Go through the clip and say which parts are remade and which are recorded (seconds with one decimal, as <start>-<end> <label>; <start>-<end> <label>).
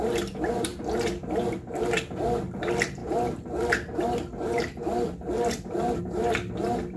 0.0-7.0 recorded